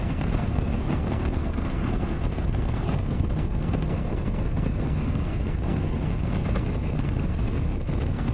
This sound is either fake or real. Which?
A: fake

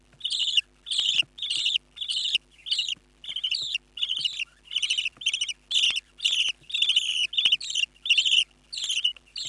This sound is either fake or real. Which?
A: real